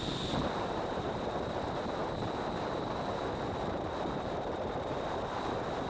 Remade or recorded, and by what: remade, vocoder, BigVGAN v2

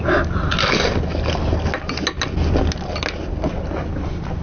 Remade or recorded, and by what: recorded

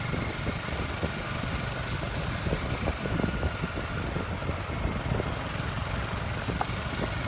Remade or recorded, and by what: recorded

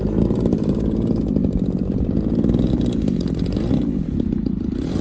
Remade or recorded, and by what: remade, vocoder, BigVGAN v2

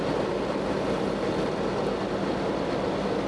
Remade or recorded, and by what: recorded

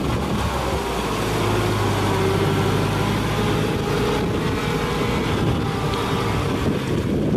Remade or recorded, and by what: recorded